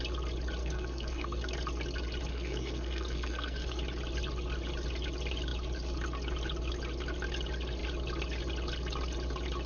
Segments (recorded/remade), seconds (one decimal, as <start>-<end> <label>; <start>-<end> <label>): 0.0-0.6 recorded; 0.6-1.5 remade; 1.5-2.3 recorded; 2.3-3.8 remade; 3.8-9.7 recorded